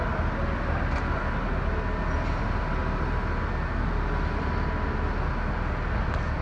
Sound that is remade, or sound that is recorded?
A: recorded